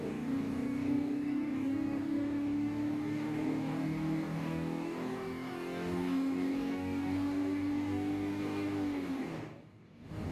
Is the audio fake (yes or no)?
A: yes